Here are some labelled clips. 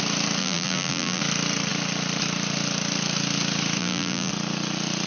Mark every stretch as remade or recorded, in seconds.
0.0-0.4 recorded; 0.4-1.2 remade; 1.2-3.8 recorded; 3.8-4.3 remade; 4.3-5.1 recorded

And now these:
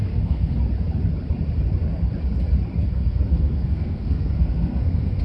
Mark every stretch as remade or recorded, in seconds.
0.0-0.6 remade; 0.6-2.8 recorded; 2.8-5.2 remade